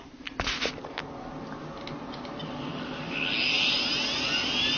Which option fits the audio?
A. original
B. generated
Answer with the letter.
A